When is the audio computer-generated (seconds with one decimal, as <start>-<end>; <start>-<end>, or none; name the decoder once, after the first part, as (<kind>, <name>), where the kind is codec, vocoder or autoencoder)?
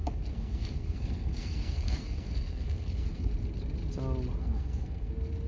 0.0-3.3 (codec, SNAC); 4.4-5.1